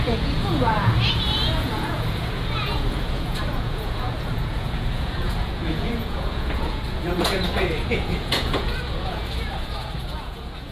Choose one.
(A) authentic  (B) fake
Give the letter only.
B